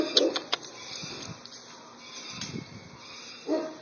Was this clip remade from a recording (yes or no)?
no